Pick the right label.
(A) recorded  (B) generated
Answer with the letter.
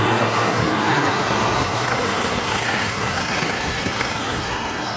B